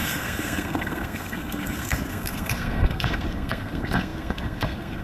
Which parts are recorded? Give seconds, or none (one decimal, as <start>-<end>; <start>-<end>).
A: none